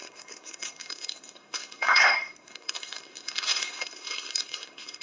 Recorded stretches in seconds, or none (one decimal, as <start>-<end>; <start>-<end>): none